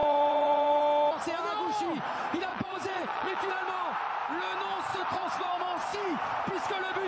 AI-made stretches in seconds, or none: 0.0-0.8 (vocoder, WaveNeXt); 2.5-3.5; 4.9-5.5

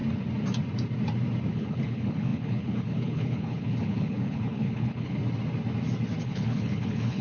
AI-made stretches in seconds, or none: 1.5-5.2 (codec, HILCodec); 6.2-7.2

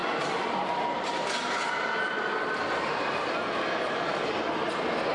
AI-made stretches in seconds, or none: none